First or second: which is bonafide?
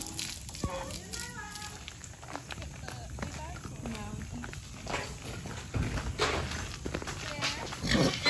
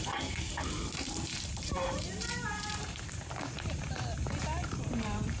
first